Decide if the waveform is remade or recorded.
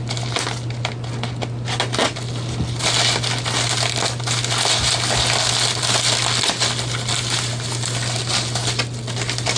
recorded